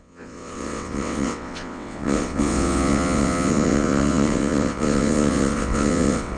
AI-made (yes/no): yes